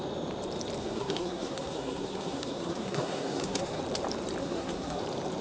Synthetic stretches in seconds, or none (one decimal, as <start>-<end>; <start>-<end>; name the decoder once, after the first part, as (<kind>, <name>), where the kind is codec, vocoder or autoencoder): 0.8-3.8 (codec, SNAC); 4.4-5.0